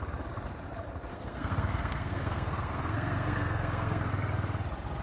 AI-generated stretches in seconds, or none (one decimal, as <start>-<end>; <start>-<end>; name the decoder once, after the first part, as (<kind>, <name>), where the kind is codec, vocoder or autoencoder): 1.1-4.1 (codec, SNAC)